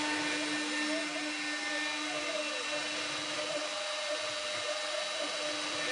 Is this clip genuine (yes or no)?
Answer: yes